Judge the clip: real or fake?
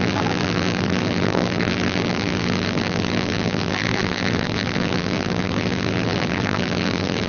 fake